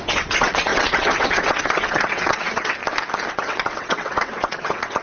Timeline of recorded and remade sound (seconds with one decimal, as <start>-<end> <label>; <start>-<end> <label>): 0.0-2.8 remade; 2.8-3.3 recorded; 3.3-5.0 remade